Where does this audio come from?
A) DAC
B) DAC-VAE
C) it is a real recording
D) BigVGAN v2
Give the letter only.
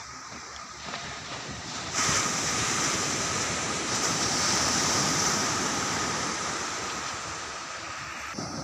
D